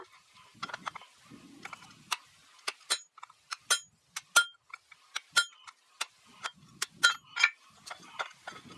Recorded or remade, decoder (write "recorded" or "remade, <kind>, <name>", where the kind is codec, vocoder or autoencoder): recorded